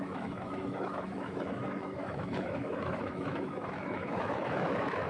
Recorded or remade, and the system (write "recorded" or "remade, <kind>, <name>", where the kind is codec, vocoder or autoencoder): remade, autoencoder, DAC-VAE